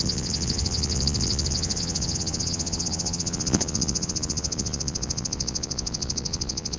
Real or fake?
fake